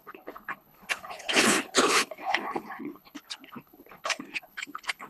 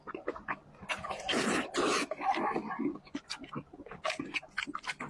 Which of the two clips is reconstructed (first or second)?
first